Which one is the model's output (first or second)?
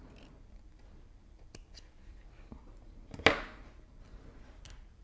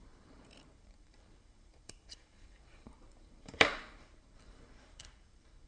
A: second